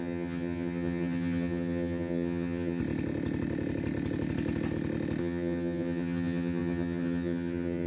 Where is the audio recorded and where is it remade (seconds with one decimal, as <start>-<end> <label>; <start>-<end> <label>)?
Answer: 0.0-2.8 remade; 2.8-5.2 recorded; 5.2-7.9 remade